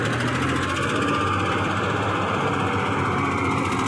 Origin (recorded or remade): recorded